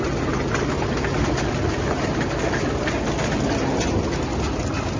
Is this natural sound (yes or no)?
yes